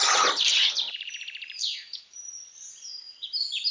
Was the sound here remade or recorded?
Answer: remade